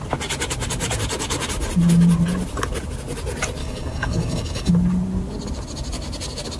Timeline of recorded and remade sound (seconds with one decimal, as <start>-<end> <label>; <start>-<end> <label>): 0.0-3.6 recorded; 3.6-4.7 remade; 4.7-6.6 recorded